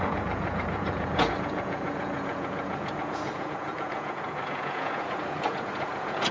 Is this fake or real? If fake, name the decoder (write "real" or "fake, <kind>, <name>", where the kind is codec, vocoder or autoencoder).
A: fake, vocoder, Vocos